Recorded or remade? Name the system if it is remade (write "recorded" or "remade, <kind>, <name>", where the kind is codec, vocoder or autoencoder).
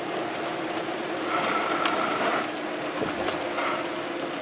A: recorded